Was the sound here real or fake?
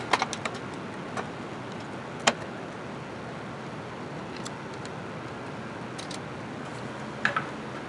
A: real